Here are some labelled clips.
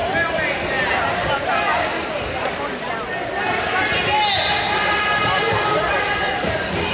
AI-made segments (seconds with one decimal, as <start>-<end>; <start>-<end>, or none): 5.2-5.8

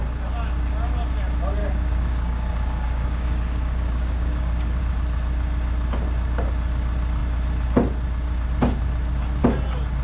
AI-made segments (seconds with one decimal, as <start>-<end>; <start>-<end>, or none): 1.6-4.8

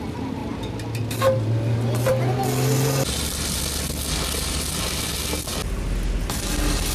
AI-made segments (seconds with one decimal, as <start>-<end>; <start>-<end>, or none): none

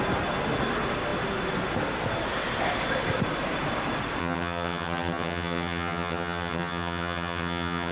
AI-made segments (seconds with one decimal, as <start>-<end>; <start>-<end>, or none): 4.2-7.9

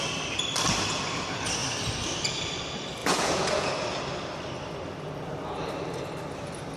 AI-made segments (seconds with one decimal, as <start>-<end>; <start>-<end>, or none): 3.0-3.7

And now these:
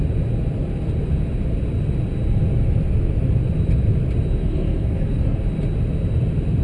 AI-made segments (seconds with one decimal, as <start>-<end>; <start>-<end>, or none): 4.4-5.4

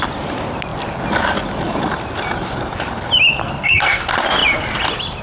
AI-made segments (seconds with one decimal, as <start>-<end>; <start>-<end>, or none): 3.4-4.0

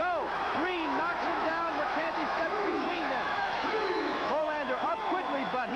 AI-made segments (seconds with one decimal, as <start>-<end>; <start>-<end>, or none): 0.0-5.8